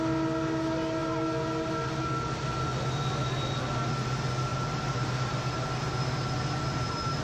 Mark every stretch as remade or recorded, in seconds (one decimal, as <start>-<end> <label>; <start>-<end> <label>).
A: 0.0-7.2 recorded

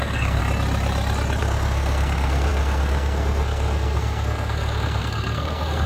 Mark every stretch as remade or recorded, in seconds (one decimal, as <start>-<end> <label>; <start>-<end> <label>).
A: 0.0-0.4 remade; 0.4-1.4 recorded; 1.4-5.9 remade

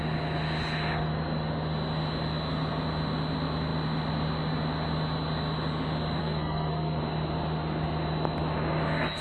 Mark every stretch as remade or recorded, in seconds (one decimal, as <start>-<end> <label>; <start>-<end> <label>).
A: 0.0-6.2 recorded; 6.2-7.0 remade; 7.0-9.2 recorded

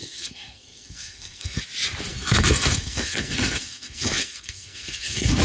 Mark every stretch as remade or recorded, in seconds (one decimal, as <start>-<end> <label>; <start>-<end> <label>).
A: 0.0-1.6 remade; 1.6-2.1 recorded; 2.1-5.4 remade